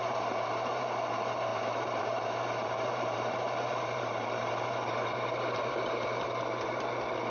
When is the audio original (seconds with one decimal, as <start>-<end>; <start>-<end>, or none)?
none